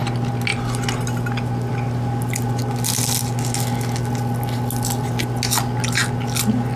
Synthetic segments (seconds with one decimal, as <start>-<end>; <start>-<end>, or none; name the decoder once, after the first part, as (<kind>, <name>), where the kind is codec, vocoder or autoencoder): none